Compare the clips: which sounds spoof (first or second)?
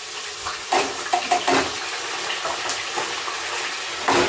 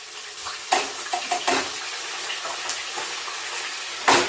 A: second